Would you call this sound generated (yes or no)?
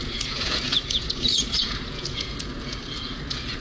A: yes